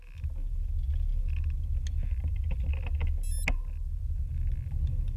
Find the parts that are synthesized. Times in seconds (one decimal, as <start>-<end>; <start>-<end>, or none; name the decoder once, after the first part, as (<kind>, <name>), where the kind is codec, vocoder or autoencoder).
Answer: none